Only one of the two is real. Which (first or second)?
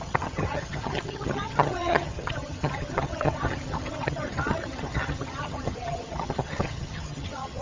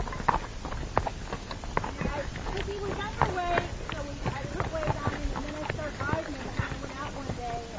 second